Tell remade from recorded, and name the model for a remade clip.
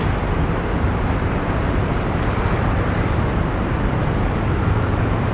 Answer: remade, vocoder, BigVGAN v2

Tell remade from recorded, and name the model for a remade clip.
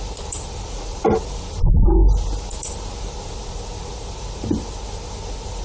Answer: recorded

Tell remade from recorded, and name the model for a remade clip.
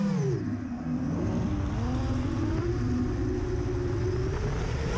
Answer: recorded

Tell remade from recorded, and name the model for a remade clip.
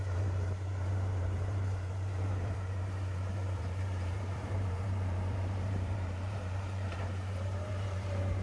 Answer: remade, vocoder, BigVGAN v2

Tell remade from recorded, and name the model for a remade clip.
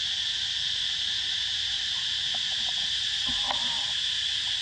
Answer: recorded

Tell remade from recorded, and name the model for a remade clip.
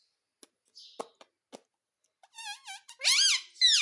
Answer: recorded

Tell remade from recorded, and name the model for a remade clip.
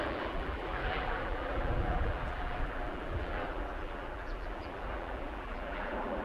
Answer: remade, vocoder, BigVGAN v2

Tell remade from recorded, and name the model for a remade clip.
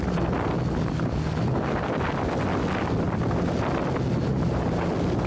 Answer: recorded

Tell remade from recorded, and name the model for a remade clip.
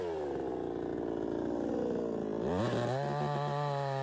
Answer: recorded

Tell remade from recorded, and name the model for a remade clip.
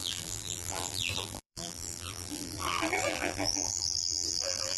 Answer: remade, vocoder, BigVGAN v2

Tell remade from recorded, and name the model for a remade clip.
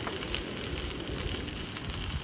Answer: recorded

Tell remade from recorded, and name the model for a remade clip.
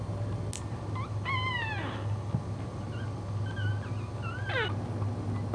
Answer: recorded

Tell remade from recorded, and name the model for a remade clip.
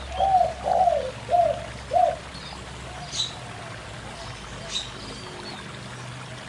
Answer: recorded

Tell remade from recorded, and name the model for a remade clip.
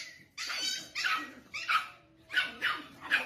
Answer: remade, vocoder, BigVGAN v2